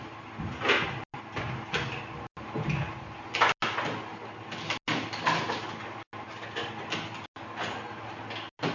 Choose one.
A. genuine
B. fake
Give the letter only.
A